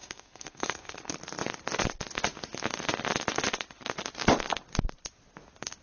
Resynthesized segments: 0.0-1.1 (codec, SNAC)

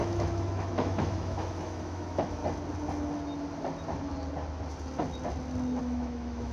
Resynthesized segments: 0.0-2.4 (autoencoder, DAC-VAE); 5.8-6.5

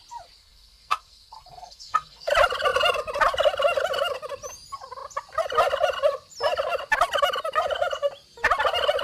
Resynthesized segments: 0.4-2.3 (codec, SNAC)

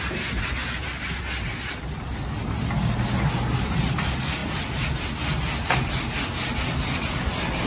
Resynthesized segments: 0.6-1.2 (vocoder, BigVGAN v2)

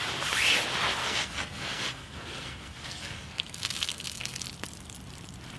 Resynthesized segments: 1.0-4.4 (codec, SNAC)